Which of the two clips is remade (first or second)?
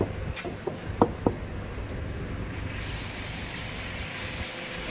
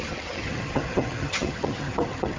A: second